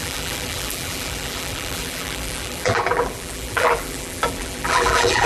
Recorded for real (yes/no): no